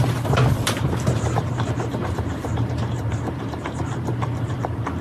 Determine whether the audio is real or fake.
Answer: fake